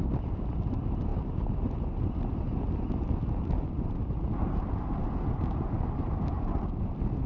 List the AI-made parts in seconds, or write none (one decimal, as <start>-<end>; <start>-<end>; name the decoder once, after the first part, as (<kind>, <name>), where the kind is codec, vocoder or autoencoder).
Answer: none